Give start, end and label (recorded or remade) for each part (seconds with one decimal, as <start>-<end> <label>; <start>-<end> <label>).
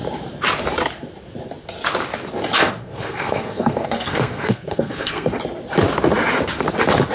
0.0-2.7 recorded; 2.7-5.3 remade; 5.3-7.1 recorded